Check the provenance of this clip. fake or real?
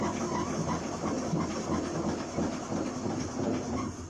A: real